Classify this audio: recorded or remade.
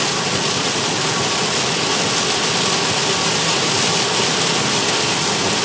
recorded